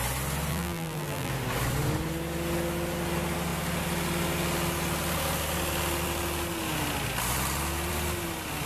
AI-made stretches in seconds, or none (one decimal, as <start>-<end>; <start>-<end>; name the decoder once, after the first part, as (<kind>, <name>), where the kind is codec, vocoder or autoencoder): 0.5-1.3 (vocoder, BigVGAN v2)

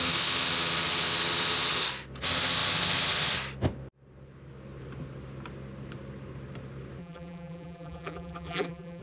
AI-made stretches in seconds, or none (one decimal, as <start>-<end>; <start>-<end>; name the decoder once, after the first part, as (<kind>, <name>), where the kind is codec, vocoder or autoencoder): 7.0-9.0 (vocoder, BigVGAN v2)

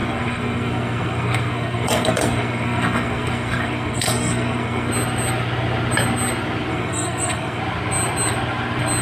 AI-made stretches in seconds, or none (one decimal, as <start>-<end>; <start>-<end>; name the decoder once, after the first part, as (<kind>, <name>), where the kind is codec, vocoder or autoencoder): 0.0-4.9 (codec, SNAC); 6.7-7.6